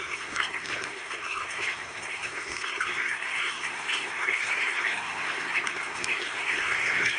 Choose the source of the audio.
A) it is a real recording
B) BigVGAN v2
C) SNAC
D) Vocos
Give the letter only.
C